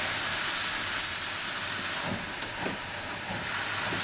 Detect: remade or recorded recorded